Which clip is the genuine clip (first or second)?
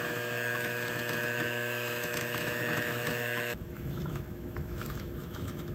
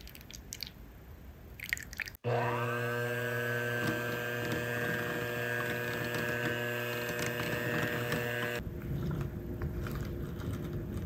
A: second